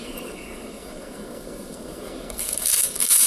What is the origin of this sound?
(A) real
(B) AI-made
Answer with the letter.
B